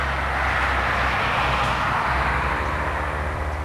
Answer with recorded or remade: recorded